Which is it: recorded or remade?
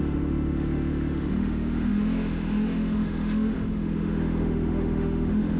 remade